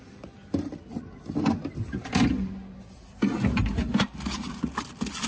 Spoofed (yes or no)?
no